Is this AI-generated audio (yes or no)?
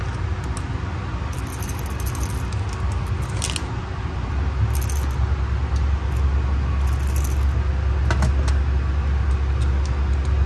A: no